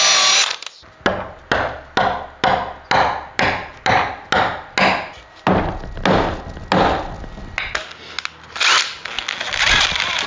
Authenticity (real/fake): real